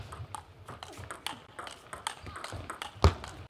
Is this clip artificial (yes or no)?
no